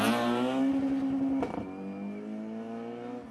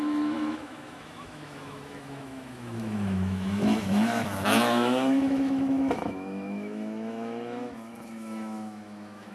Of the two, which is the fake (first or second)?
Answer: second